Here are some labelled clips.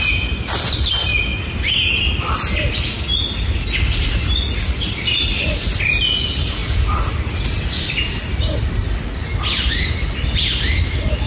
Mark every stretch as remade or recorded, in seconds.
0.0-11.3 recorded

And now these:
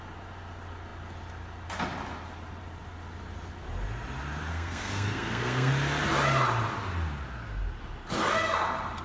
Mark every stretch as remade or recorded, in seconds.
0.0-4.5 recorded; 4.5-5.7 remade; 5.7-9.0 recorded

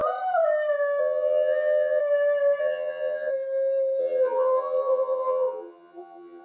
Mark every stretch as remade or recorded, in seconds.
0.0-1.0 recorded; 1.0-2.0 remade; 2.0-2.6 recorded; 2.6-3.3 remade; 3.3-4.0 recorded; 4.0-6.4 remade

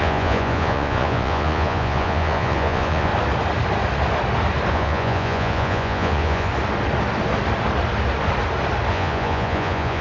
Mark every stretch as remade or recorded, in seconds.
0.0-3.1 remade; 3.1-4.7 recorded; 4.7-6.5 remade; 6.5-8.9 recorded; 8.9-10.0 remade

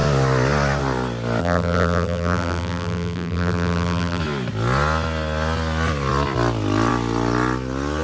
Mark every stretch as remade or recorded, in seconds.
0.0-1.4 recorded; 1.4-4.2 remade; 4.2-8.0 recorded

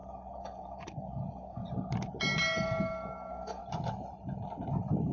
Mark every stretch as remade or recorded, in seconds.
0.0-1.6 remade; 1.6-2.4 recorded; 2.4-3.6 remade; 3.6-5.1 recorded